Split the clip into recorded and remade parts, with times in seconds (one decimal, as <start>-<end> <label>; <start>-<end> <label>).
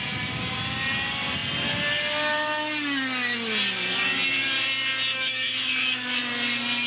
0.0-5.1 recorded; 5.1-6.2 remade; 6.2-6.9 recorded